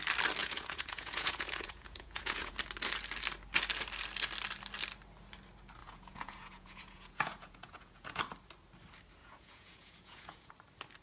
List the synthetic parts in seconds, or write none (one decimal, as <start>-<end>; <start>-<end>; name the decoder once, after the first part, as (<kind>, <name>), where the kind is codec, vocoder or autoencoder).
0.4-2.5 (vocoder, Vocos); 5.8-8.2; 9.2-10.5